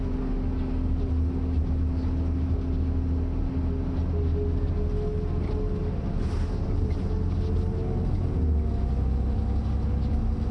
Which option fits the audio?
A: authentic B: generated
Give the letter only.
A